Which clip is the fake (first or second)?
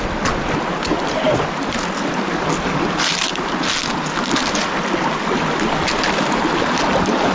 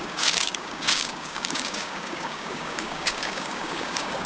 second